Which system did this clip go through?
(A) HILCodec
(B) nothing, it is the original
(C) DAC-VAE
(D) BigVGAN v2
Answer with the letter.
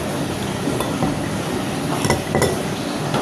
B